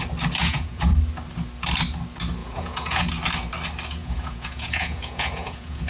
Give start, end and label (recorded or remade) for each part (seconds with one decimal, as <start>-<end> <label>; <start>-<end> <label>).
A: 0.0-0.4 recorded; 0.4-1.0 remade; 1.0-2.4 recorded; 2.4-3.1 remade; 3.1-4.0 recorded; 4.0-5.9 remade